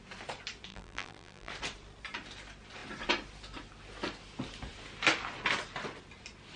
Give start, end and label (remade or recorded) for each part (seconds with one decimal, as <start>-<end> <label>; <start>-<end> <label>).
0.0-0.7 recorded; 0.7-1.5 remade; 1.5-6.6 recorded